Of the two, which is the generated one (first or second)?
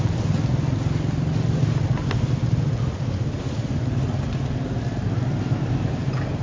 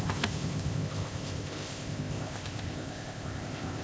second